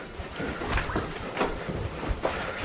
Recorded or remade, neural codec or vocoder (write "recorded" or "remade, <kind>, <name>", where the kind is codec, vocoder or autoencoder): recorded